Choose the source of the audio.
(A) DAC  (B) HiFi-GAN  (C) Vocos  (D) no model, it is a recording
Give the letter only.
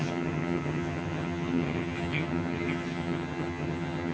B